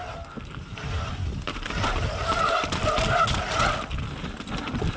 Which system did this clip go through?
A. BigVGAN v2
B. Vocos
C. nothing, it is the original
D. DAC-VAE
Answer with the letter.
C